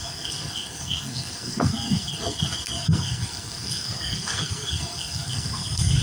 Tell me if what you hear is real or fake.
fake